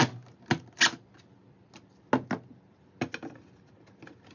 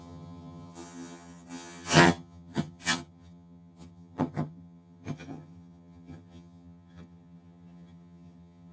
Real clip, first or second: first